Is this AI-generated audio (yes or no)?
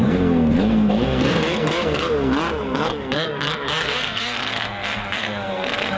yes